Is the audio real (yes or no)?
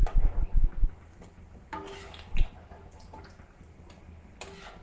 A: yes